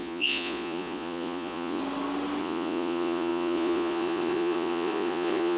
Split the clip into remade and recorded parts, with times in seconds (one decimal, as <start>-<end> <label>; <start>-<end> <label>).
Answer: 0.0-1.8 remade; 1.8-2.4 recorded; 2.4-5.6 remade